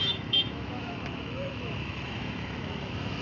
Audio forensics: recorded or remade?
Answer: remade